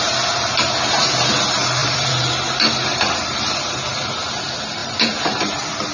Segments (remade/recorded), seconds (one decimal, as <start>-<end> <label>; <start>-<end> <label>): 0.0-1.8 recorded; 1.8-3.7 remade; 3.7-4.8 recorded; 4.8-5.4 remade; 5.4-5.9 recorded